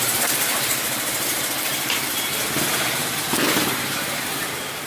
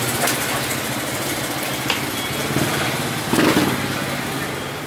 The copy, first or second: first